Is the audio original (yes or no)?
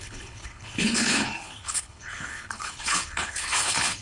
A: no